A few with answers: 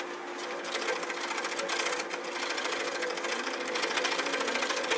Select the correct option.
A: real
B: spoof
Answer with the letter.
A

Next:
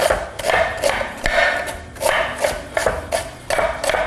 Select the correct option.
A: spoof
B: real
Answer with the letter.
B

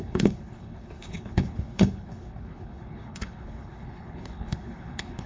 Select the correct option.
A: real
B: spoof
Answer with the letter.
B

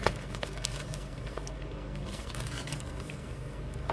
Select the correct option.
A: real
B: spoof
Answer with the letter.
B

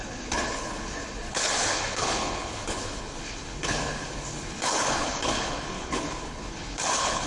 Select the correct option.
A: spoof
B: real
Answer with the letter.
A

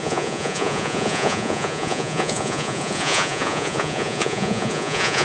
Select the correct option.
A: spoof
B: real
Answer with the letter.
A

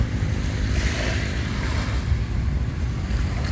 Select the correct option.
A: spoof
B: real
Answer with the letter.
B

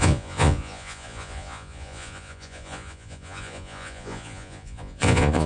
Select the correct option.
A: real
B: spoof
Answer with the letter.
B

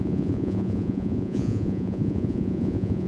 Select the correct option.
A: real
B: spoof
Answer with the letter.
B